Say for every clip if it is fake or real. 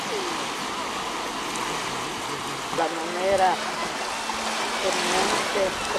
real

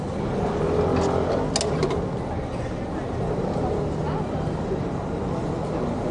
real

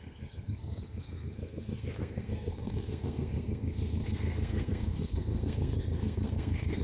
fake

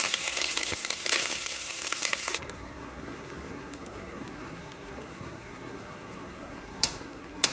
fake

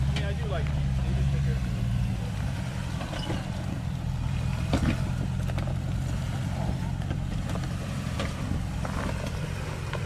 real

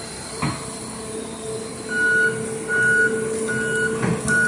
real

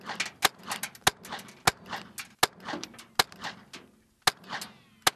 real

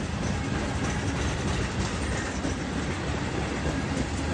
real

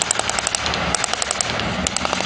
real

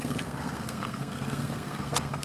fake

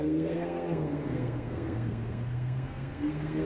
fake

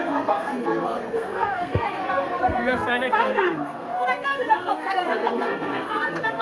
fake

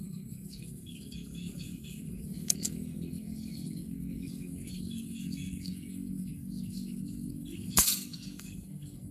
fake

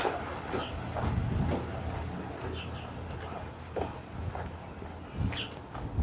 real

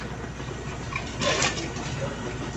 real